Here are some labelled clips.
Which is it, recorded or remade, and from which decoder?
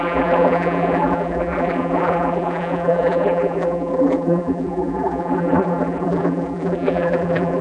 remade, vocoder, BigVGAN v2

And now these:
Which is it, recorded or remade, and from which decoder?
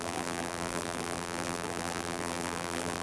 remade, vocoder, BigVGAN v2